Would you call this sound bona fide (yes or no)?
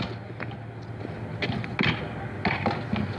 yes